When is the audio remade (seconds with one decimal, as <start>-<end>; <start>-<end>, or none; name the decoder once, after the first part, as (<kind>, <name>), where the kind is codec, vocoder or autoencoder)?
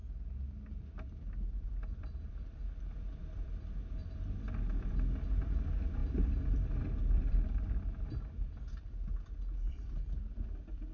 0.0-10.9 (vocoder, BigVGAN v2)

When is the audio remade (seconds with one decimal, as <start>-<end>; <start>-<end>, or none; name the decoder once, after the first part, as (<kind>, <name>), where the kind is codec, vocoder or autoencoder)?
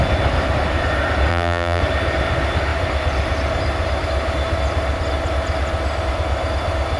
1.3-1.8 (vocoder, BigVGAN v2)